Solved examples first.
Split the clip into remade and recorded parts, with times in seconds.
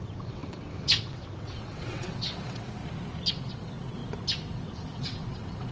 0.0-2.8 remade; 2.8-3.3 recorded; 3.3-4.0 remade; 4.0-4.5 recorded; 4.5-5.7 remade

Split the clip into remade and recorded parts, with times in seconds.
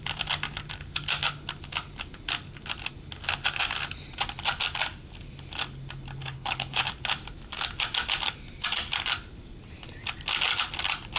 0.0-6.2 recorded; 6.2-6.9 remade; 6.9-11.2 recorded